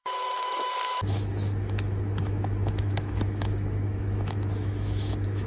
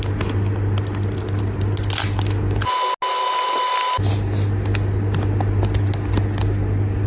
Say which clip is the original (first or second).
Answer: second